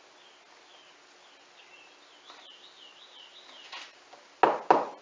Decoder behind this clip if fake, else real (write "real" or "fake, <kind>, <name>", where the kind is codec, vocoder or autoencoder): real